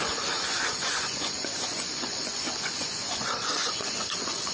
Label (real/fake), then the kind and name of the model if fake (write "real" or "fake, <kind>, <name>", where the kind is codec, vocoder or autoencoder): fake, vocoder, Vocos